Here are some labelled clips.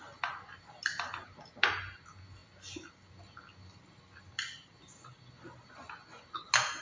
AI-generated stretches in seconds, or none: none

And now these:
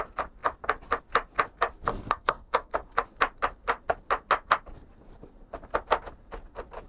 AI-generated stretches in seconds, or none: 1.9-2.7 (codec, SNAC)

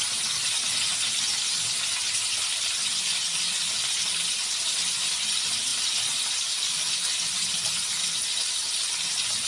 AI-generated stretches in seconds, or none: none